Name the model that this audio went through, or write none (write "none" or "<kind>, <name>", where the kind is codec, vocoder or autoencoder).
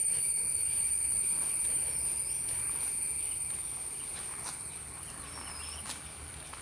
none